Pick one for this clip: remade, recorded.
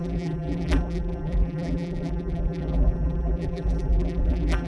remade